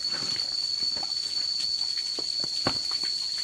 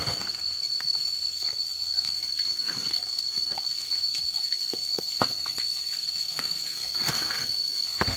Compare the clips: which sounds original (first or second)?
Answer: first